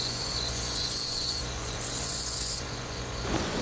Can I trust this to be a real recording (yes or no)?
no